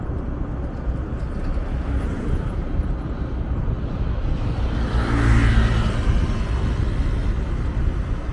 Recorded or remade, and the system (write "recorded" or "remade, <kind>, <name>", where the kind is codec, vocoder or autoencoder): recorded